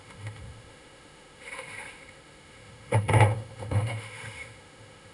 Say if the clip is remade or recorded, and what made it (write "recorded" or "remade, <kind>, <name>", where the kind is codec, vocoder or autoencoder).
remade, autoencoder, DAC-VAE